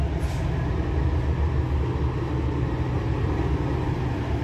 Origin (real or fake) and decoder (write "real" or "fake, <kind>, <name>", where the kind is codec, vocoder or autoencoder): real